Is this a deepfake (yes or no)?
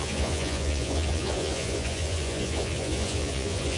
yes